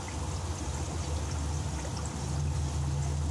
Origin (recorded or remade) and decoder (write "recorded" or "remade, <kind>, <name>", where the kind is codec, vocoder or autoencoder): recorded